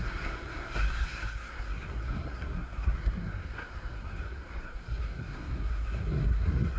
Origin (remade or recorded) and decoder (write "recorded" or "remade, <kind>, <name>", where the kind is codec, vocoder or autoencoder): remade, codec, SNAC